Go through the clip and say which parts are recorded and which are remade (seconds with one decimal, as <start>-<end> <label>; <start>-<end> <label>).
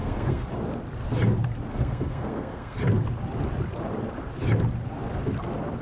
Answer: 0.0-0.5 remade; 0.5-1.7 recorded; 1.7-2.8 remade; 2.8-5.8 recorded